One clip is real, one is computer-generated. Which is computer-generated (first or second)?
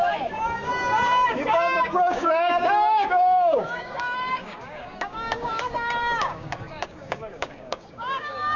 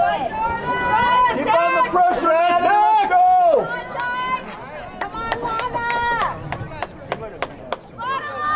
first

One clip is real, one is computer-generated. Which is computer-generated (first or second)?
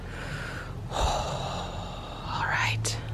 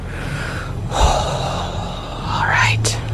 second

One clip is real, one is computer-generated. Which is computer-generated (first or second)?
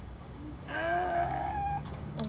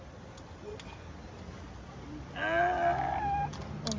first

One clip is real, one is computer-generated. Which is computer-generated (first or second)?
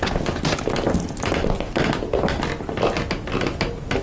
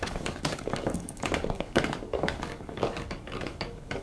second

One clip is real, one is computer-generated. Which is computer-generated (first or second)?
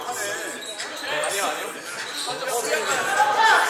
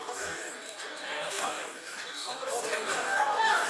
second